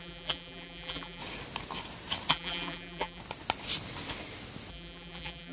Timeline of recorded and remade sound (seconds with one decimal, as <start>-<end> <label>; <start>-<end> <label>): 0.0-1.2 remade; 1.2-2.3 recorded; 2.3-3.2 remade; 3.2-4.7 recorded; 4.7-5.5 remade